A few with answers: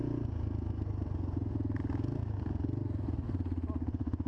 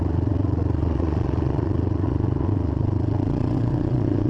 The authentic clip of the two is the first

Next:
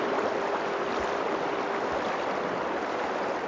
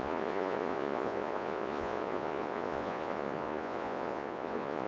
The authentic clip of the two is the first